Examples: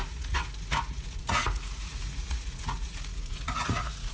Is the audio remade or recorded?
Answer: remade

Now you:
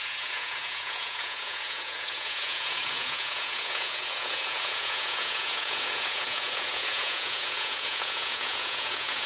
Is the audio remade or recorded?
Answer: remade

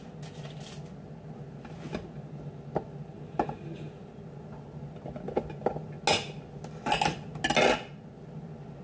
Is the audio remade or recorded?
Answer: recorded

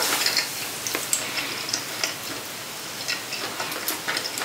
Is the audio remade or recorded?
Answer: recorded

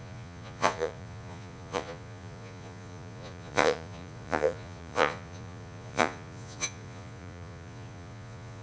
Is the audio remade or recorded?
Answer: remade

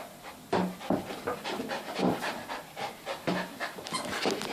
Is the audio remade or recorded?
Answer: recorded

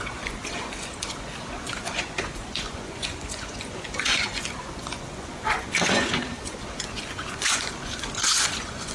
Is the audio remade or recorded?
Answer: remade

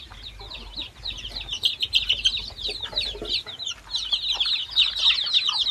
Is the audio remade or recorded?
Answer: recorded